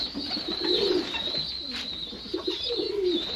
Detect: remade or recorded recorded